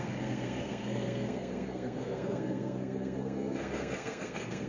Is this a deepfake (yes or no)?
yes